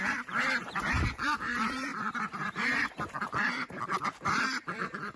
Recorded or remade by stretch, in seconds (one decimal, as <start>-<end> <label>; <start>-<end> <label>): 0.0-5.2 remade